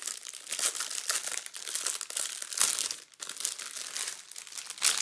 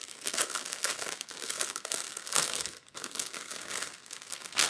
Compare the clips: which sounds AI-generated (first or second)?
second